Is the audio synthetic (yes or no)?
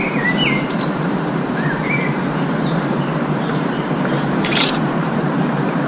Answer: yes